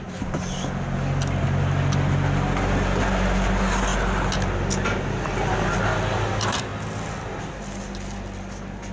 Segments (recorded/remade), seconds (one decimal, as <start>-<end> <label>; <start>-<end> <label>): 0.0-8.9 recorded